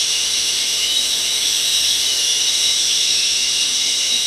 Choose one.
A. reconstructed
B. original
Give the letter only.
A